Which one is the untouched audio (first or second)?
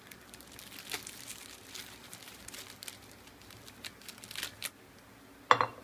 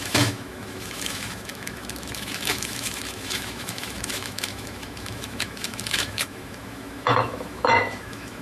first